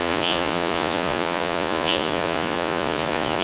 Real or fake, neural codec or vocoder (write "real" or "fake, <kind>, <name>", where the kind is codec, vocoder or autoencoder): fake, vocoder, Vocos